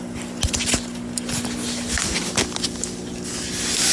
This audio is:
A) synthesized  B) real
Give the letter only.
B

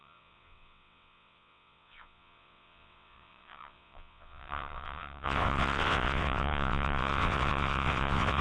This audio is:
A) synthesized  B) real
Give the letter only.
A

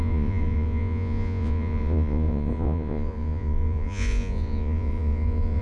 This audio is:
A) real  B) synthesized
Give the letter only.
B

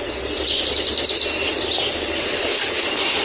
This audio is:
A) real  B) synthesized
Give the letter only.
A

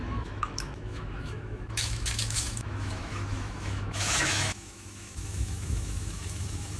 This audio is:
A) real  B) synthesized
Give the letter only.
B